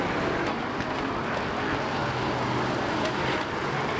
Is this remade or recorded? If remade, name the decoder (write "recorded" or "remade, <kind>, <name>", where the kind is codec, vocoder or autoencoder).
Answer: recorded